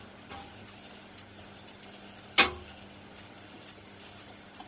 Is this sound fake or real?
fake